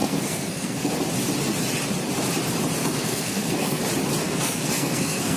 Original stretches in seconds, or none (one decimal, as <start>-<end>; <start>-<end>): 0.9-2.8; 3.8-4.2